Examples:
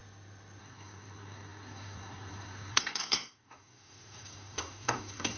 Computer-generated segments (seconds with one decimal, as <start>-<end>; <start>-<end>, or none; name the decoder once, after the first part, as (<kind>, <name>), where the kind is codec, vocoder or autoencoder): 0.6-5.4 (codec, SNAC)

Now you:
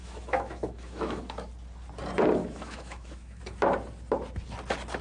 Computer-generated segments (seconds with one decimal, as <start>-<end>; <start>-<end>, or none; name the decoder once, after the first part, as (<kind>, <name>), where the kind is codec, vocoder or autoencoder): 0.0-1.5 (autoencoder, DAC-VAE); 2.4-3.4

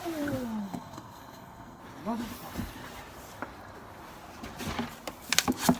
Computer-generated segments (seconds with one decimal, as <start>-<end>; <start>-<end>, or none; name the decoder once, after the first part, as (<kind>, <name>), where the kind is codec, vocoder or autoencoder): 0.6-1.8 (codec, SNAC)

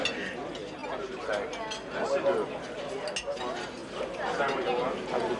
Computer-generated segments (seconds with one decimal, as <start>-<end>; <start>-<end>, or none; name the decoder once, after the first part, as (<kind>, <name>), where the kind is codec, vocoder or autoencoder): none

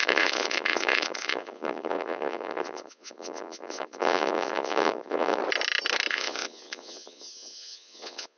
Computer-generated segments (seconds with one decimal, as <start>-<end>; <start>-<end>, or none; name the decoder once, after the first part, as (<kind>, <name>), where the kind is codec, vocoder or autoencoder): 0.0-5.4 (vocoder, Vocos); 6.1-8.4